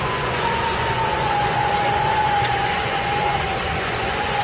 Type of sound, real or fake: fake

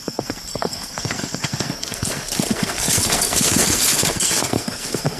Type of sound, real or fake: fake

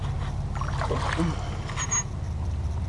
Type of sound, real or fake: real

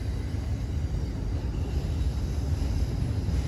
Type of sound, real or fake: real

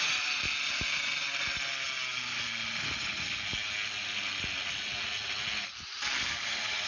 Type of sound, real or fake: real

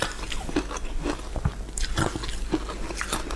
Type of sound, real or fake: real